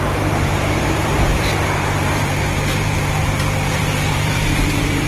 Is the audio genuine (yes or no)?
no